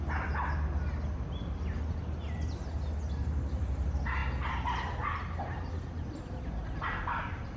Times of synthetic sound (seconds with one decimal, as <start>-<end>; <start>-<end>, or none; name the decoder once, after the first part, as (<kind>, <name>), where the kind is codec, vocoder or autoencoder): none